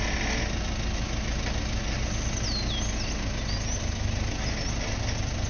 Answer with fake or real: real